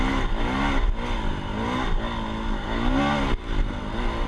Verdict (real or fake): real